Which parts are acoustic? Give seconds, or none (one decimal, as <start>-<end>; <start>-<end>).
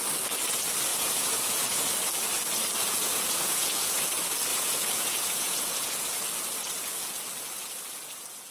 0.0-0.9; 1.8-2.8; 4.0-4.5; 6.2-8.5